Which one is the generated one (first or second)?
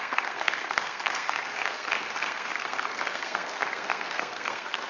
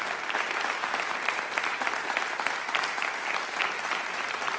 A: first